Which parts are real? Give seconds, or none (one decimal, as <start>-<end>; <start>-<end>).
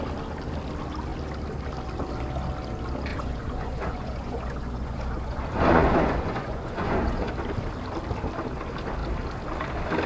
0.0-3.1; 7.3-10.1